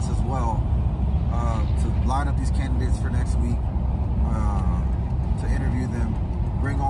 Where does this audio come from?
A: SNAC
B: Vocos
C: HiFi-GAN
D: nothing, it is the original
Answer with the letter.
D